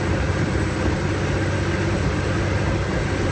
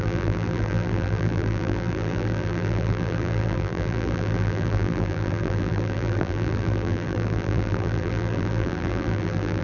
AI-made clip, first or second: second